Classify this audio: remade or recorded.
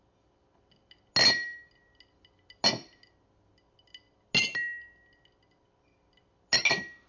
recorded